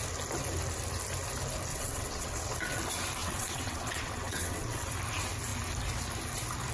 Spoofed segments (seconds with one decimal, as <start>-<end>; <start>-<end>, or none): 1.7-2.8; 3.2-4.9